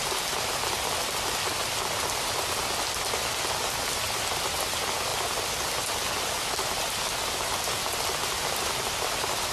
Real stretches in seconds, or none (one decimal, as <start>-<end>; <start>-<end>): 0.0-9.5